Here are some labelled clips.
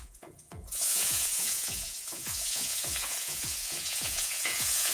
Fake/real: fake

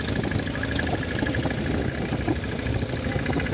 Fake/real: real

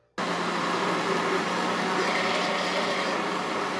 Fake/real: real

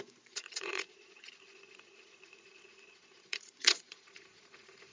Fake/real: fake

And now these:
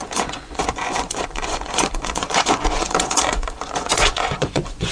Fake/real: fake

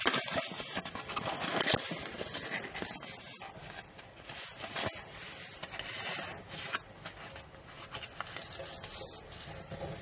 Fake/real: real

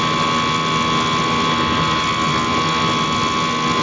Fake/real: real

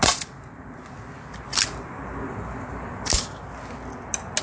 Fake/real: real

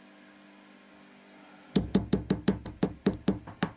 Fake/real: real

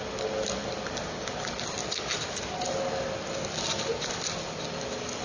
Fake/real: real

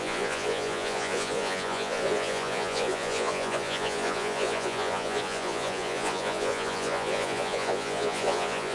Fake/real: fake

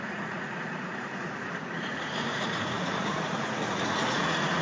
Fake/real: fake